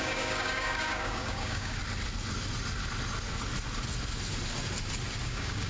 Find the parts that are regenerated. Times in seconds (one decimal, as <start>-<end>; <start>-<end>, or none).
0.0-1.8; 5.2-5.7